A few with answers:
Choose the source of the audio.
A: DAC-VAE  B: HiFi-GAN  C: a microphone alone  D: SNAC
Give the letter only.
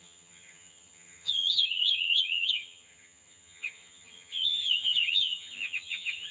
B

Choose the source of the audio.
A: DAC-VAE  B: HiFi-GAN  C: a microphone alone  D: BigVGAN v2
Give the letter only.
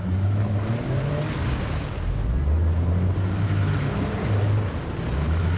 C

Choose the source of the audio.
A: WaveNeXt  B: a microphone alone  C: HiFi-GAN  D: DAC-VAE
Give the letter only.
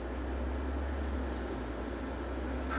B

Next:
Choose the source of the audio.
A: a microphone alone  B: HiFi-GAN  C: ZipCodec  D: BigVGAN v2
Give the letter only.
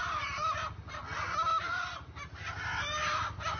A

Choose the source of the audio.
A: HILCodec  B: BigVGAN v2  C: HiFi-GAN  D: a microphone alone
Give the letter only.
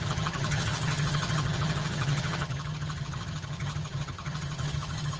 C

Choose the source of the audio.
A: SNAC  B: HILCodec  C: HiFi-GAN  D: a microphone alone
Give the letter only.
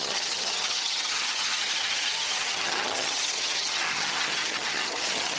C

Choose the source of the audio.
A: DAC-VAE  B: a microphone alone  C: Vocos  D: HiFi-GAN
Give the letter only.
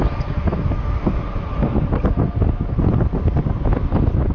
B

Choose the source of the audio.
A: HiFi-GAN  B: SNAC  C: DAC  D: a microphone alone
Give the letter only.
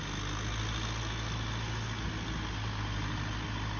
D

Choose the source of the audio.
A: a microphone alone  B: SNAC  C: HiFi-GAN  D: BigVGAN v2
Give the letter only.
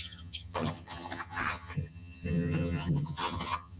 C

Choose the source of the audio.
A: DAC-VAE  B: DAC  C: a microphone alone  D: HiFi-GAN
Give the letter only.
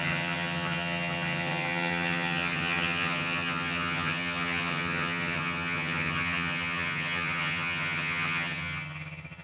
D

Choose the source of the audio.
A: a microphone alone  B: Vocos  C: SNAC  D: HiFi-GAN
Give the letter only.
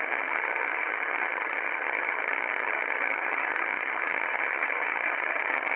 D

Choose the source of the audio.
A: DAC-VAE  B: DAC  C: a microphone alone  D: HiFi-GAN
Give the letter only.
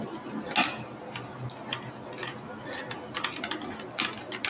C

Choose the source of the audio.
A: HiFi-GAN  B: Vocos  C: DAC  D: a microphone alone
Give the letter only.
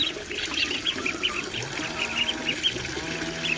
D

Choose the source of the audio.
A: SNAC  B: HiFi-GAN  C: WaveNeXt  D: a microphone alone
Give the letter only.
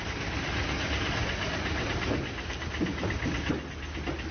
D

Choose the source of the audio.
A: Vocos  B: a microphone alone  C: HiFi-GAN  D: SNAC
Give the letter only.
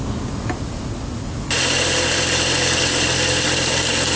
B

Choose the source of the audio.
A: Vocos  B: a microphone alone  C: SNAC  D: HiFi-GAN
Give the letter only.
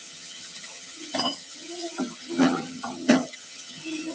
D